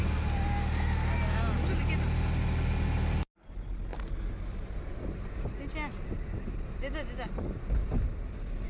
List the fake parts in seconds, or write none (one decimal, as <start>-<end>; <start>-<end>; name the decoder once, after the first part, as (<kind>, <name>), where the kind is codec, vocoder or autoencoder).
none